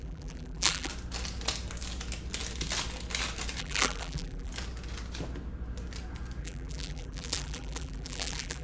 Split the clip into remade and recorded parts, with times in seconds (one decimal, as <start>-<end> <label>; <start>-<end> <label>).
0.0-0.9 remade; 0.9-3.6 recorded; 3.6-4.5 remade; 4.5-6.4 recorded; 6.4-8.6 remade

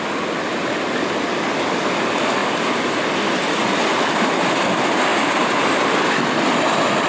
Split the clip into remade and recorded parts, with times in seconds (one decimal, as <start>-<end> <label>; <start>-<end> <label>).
0.0-7.1 recorded

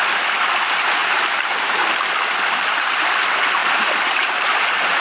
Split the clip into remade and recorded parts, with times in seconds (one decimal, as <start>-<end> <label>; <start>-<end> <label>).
0.0-1.0 recorded; 1.0-2.1 remade; 2.1-3.6 recorded; 3.6-5.0 remade

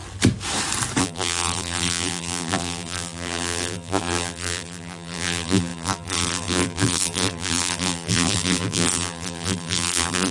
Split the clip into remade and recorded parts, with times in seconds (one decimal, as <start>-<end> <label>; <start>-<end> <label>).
0.0-1.0 recorded; 1.0-10.3 remade

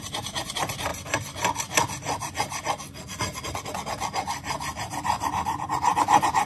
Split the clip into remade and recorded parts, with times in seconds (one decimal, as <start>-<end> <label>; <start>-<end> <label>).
0.0-0.9 remade; 0.9-4.8 recorded; 4.8-6.5 remade

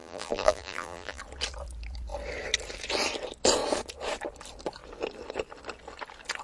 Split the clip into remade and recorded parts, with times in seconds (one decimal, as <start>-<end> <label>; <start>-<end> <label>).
0.0-1.2 remade; 1.2-6.4 recorded